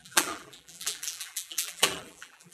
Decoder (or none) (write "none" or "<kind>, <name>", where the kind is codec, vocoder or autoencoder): vocoder, BigVGAN v2